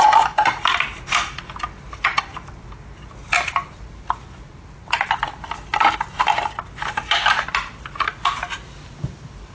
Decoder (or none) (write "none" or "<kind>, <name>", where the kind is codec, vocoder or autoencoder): none